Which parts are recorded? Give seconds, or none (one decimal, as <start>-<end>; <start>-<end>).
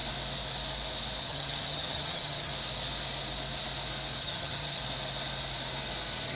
0.0-1.2; 2.5-4.2; 4.8-6.3